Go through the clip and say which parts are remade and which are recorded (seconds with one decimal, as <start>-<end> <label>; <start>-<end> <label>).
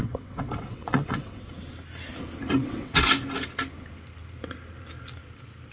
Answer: 0.0-1.5 remade; 1.5-2.6 recorded; 2.6-3.1 remade; 3.1-5.7 recorded